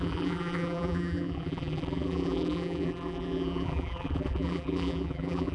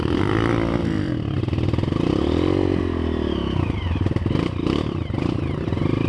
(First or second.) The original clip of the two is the second